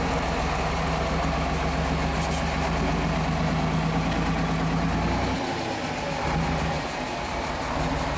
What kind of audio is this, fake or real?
real